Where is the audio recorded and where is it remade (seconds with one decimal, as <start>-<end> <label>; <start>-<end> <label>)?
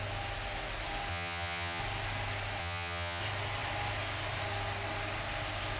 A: 0.0-1.1 recorded; 1.1-1.8 remade; 1.8-2.6 recorded; 2.6-3.2 remade; 3.2-5.8 recorded